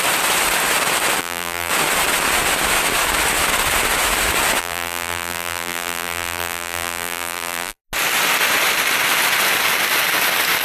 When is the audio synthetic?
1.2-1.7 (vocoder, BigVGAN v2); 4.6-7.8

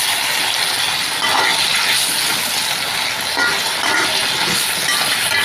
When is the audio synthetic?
none

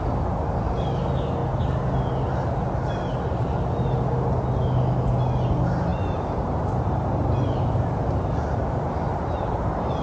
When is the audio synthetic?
5.9-8.5 (vocoder, BigVGAN v2); 9.1-10.0

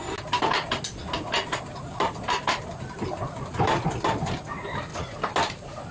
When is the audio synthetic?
4.9-5.9 (vocoder, BigVGAN v2)